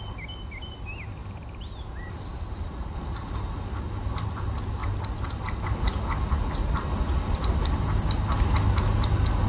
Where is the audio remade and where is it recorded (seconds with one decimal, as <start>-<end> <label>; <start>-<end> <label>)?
0.0-1.2 recorded; 1.2-2.7 remade; 2.7-9.5 recorded